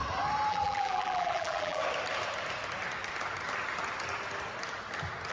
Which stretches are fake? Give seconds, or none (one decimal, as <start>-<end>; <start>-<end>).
0.5-1.8